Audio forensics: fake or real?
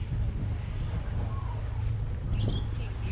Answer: real